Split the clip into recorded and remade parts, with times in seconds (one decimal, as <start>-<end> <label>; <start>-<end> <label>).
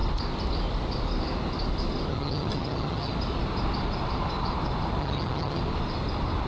0.0-2.1 recorded; 2.1-3.1 remade; 3.1-5.0 recorded; 5.0-5.6 remade; 5.6-6.5 recorded